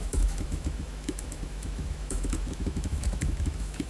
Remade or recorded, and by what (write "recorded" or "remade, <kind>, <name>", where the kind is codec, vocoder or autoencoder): remade, autoencoder, DAC-VAE